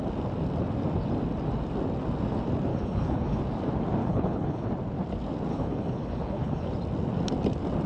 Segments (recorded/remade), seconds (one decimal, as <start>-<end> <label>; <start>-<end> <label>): 0.0-2.7 recorded; 2.7-3.4 remade; 3.4-4.0 recorded; 4.0-4.7 remade; 4.7-5.5 recorded; 5.5-6.7 remade; 6.7-7.9 recorded